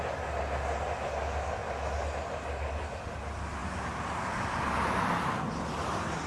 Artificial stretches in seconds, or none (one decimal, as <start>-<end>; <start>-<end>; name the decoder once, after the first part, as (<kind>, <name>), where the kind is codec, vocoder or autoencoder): none